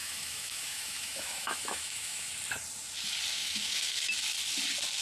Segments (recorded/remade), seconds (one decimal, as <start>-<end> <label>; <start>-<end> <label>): 0.0-2.3 remade; 2.3-3.3 recorded; 3.3-4.1 remade; 4.1-5.0 recorded